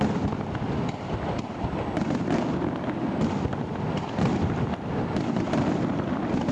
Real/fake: real